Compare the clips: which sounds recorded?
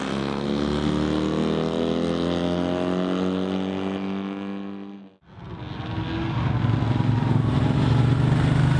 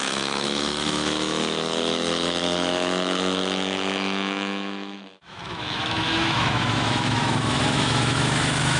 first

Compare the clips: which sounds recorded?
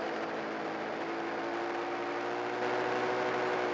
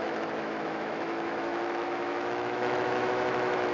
first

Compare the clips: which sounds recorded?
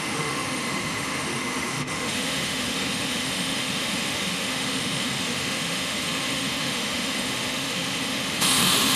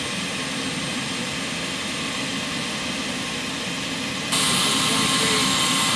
second